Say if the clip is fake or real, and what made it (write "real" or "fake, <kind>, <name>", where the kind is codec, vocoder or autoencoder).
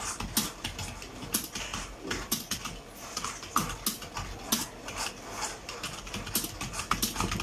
real